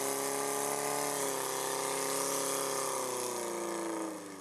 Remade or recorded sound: recorded